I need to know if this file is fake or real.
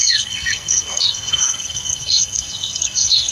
fake